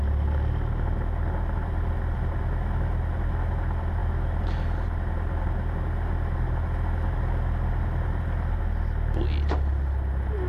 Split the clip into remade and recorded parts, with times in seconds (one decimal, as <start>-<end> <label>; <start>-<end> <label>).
0.0-10.5 recorded